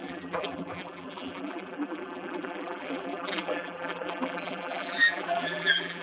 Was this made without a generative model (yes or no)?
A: no